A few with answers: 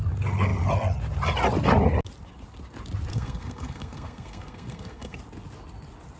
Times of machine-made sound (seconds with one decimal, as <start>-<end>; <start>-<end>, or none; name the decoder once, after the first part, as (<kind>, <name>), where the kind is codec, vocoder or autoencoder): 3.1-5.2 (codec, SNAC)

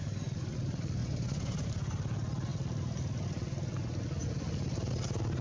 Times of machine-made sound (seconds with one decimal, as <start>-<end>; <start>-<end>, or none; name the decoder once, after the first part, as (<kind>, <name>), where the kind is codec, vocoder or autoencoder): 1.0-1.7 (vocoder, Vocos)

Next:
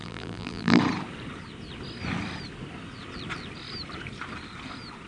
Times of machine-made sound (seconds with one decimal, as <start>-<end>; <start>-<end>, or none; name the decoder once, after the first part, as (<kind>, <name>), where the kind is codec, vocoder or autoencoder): 0.0-0.8 (vocoder, BigVGAN v2)

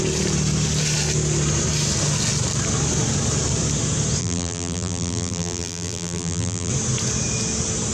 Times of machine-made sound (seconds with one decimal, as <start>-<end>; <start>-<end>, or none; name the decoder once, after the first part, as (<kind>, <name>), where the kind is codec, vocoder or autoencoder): 4.2-6.7 (vocoder, BigVGAN v2)